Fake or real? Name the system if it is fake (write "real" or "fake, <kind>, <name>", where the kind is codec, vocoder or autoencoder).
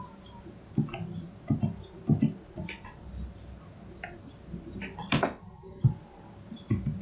real